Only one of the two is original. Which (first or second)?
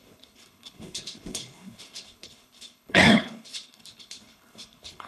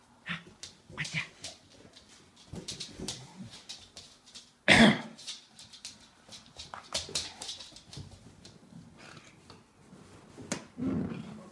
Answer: second